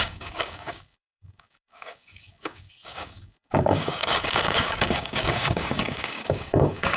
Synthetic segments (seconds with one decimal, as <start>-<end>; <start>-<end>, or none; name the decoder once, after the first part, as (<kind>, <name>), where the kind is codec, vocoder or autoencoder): 0.0-7.0 (codec, DAC)